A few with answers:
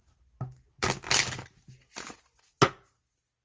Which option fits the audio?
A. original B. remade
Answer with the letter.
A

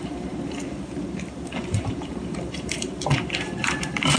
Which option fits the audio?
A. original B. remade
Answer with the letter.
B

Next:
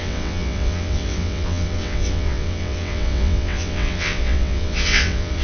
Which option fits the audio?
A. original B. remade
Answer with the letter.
B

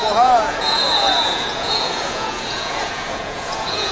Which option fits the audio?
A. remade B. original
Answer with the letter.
A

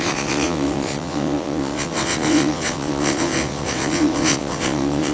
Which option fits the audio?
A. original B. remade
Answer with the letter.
B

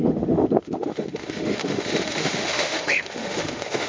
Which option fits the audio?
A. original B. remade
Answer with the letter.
B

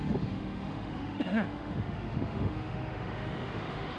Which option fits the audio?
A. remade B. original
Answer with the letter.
A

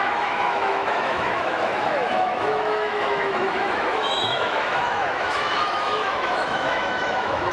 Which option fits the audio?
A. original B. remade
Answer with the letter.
B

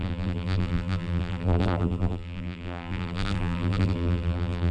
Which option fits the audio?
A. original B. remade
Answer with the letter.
B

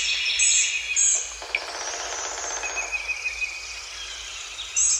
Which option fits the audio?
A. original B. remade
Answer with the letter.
A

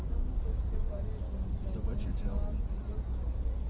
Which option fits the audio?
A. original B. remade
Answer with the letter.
A